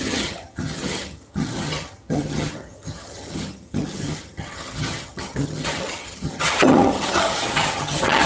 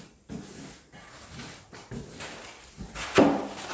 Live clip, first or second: second